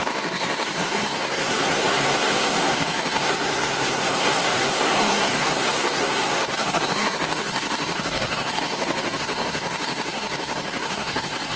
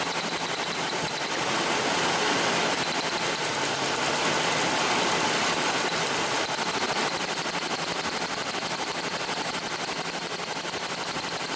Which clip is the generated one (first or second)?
first